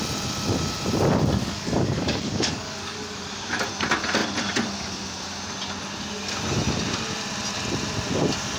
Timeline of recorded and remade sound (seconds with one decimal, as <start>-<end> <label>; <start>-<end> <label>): 0.0-1.4 recorded; 1.4-3.3 remade; 3.3-8.6 recorded